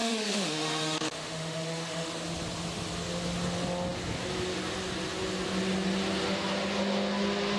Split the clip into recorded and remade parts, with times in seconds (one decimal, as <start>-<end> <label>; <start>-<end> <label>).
0.0-2.1 remade; 2.1-7.6 recorded